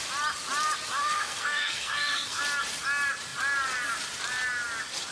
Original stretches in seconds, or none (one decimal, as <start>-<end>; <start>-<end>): 0.0-1.0; 2.4-5.1